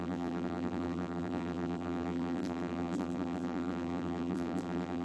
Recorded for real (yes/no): no